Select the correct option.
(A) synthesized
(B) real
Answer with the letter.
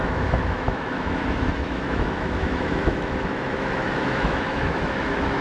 A